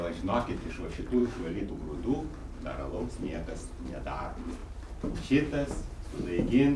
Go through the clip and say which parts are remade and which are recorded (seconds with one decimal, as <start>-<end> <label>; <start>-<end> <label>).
0.0-1.2 recorded; 1.2-1.7 remade; 1.7-6.8 recorded